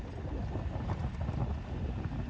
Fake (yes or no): no